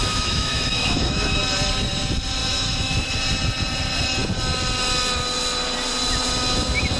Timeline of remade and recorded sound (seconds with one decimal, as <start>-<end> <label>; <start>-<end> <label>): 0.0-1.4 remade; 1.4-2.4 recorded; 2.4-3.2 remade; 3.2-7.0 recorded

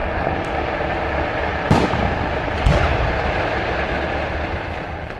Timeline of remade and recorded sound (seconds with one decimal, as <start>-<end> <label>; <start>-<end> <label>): 0.0-1.5 recorded; 1.5-3.9 remade; 3.9-5.2 recorded

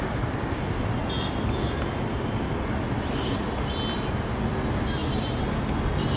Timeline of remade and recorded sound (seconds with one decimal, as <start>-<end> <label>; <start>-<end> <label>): 0.0-6.2 recorded

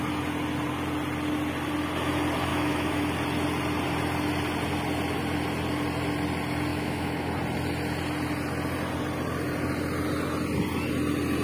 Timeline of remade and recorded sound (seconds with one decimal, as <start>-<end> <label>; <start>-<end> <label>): 0.0-2.5 recorded; 2.5-3.0 remade; 3.0-6.7 recorded; 6.7-7.3 remade; 7.3-11.4 recorded

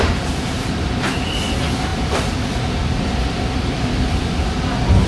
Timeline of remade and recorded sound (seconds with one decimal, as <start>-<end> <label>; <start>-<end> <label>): 0.0-5.1 remade